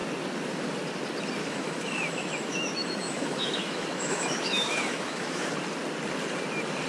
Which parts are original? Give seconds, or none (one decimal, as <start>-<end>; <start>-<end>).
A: 0.0-1.4; 5.5-6.9